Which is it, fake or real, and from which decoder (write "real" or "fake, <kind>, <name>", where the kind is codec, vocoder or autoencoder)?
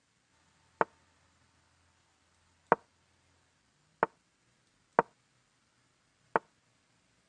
real